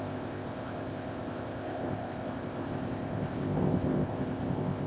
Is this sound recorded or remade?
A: remade